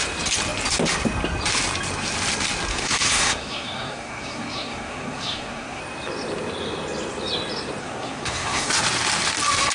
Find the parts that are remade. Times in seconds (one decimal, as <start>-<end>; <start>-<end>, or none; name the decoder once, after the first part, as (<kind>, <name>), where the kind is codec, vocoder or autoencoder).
2.7-5.8 (codec, SNAC); 7.8-8.7

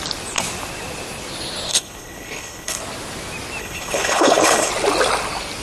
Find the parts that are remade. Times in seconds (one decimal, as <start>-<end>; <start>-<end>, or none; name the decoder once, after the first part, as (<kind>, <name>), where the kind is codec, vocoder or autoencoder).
1.7-2.8 (codec, HILCodec); 3.6-4.7

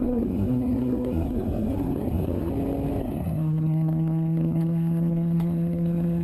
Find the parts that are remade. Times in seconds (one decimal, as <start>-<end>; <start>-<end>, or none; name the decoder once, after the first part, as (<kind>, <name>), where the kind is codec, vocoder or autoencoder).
0.0-2.5 (codec, SNAC); 3.0-6.2

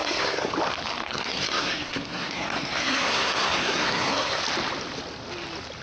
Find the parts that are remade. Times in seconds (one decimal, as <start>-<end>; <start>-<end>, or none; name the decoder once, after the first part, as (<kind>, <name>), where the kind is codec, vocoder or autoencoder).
0.0-0.5 (codec, SNAC); 1.0-4.4